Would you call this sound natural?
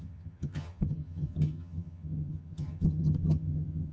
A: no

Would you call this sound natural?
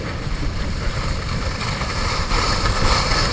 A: yes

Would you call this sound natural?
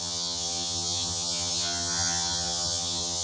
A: no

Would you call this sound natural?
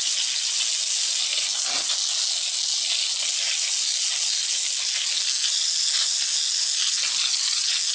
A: yes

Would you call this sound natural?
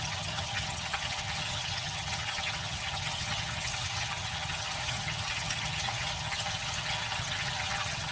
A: no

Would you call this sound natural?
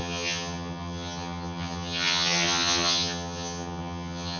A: no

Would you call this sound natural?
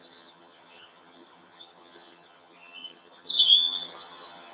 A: no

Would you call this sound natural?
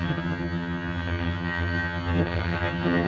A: no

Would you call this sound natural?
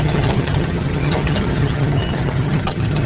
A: no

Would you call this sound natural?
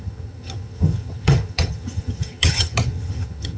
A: no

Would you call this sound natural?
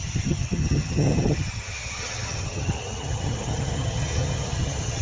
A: no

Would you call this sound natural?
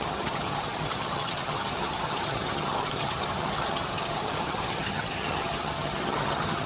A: no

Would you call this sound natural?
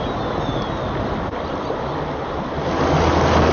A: yes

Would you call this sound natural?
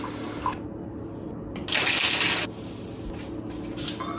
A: yes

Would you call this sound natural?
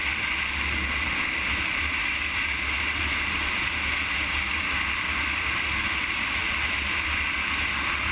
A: yes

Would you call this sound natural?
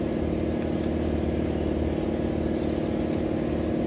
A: yes